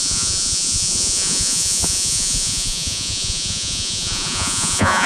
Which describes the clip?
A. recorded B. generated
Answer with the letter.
B